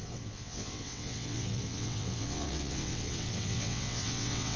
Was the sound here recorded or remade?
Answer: remade